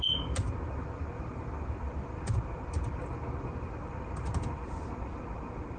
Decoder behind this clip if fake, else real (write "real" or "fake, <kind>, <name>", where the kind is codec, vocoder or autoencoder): real